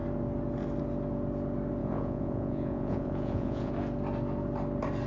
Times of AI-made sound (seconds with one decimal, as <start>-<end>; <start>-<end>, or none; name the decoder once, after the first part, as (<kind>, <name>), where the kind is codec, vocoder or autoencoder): 1.8-3.7 (vocoder, Vocos)